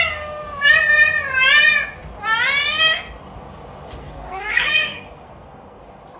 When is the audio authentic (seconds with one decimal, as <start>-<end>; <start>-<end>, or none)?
0.0-4.0; 5.8-6.2